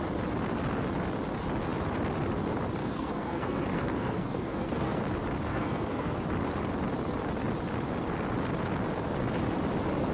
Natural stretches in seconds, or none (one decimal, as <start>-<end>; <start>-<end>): 0.0-2.8; 5.0-5.5; 6.2-10.1